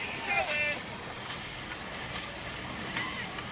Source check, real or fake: real